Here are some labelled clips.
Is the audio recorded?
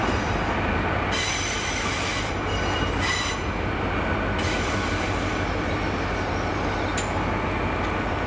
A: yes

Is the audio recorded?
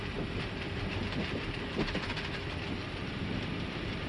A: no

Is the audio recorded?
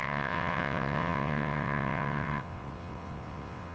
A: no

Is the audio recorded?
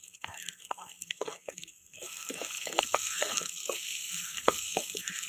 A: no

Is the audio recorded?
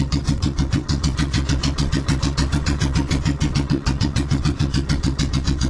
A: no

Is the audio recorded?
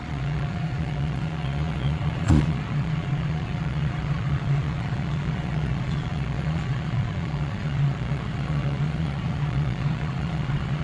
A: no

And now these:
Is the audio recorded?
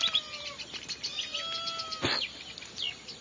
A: yes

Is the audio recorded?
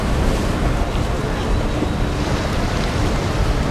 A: yes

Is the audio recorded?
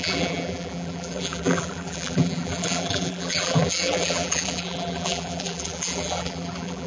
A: no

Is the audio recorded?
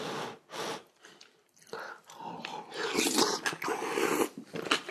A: yes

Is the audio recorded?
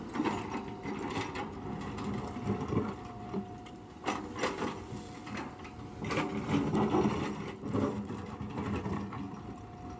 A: yes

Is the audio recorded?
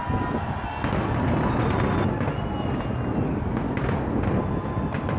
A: yes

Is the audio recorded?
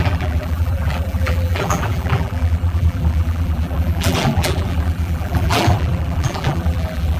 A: no